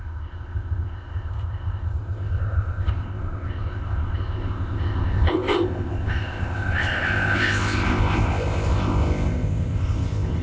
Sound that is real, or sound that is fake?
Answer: fake